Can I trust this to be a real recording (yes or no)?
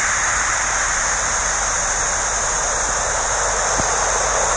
no